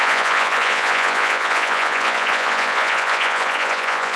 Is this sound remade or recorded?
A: remade